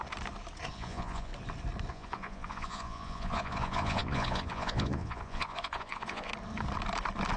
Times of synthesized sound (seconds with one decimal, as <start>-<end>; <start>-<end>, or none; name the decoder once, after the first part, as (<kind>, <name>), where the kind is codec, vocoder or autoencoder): 0.7-1.3 (vocoder, Vocos); 1.9-6.3